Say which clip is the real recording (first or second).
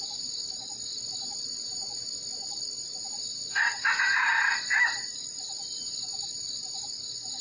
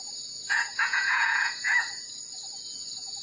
first